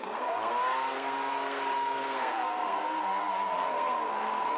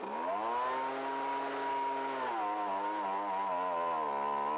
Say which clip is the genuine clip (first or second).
second